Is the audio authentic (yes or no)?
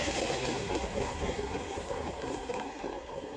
no